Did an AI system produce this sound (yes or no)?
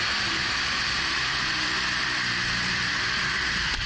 yes